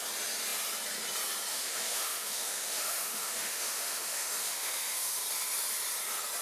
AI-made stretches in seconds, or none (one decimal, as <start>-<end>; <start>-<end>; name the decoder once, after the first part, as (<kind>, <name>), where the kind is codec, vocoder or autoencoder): 1.5-5.2 (autoencoder, DAC-VAE)